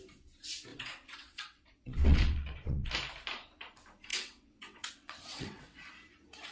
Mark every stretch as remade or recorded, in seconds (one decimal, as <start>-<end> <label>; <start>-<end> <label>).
0.0-0.7 recorded; 0.7-2.9 remade; 2.9-4.1 recorded; 4.1-5.9 remade; 5.9-6.5 recorded